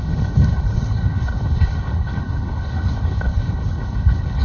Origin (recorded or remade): remade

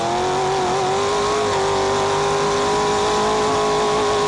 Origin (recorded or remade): recorded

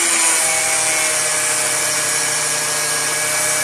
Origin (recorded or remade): recorded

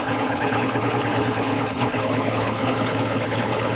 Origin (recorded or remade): remade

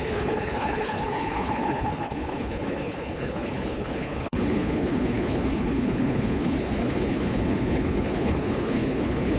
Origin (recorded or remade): remade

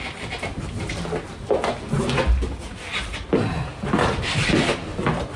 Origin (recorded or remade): recorded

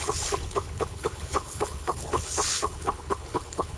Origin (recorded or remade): remade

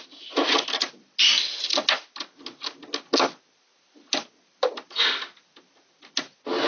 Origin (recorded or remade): recorded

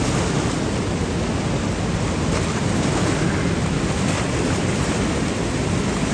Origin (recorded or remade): recorded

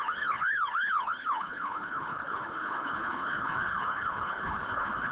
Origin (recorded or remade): remade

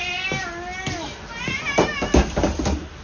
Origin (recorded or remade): recorded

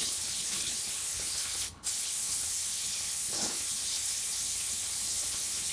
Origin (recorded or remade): remade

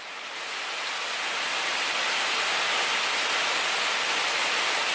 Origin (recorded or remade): recorded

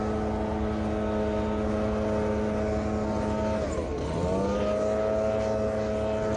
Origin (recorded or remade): recorded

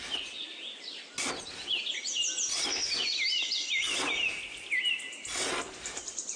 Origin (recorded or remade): recorded